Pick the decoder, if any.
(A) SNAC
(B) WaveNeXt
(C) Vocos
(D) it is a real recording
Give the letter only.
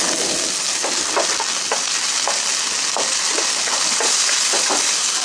D